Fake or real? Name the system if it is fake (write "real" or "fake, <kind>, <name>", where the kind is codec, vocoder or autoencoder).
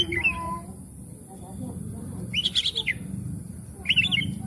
real